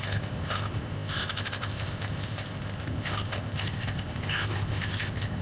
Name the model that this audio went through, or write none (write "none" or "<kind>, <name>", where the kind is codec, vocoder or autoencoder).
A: codec, ZipCodec